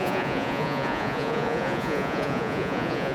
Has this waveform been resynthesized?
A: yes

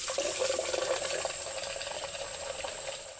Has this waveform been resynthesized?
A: no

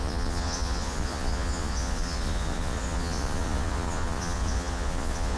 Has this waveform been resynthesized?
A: yes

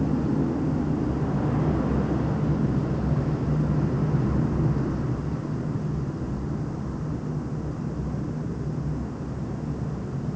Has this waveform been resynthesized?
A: no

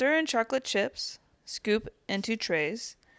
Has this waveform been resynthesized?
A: no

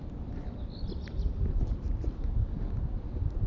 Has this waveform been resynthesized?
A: no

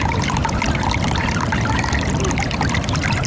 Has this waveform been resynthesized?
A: no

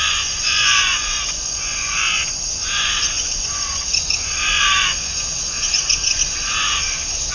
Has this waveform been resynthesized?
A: yes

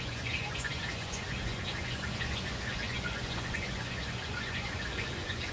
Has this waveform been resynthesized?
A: yes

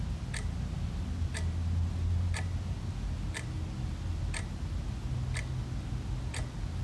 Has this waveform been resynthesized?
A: no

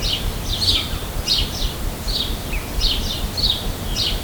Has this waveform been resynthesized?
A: no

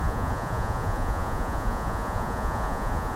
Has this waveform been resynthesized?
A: yes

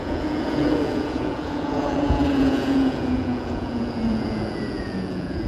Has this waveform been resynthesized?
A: yes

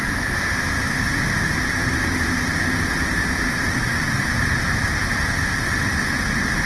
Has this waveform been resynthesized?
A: no